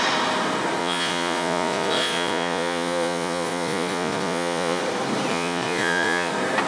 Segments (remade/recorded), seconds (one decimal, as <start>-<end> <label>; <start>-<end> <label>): 0.0-0.8 recorded; 0.8-4.8 remade; 4.8-5.3 recorded; 5.3-6.3 remade; 6.3-6.7 recorded